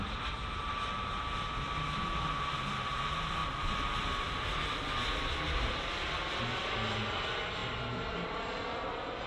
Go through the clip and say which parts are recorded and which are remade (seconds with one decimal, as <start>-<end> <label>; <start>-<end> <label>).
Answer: 0.0-9.3 recorded